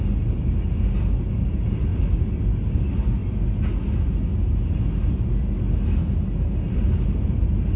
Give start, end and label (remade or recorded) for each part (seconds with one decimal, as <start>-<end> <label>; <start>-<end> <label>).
0.0-7.8 recorded